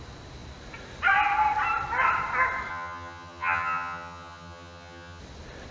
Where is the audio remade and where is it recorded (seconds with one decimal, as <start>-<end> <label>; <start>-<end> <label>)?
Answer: 0.0-2.7 recorded; 2.7-5.2 remade; 5.2-5.7 recorded